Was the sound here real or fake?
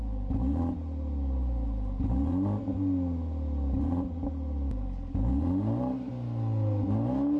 real